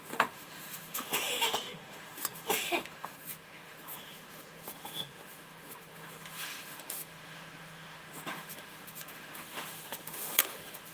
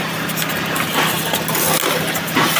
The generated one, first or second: first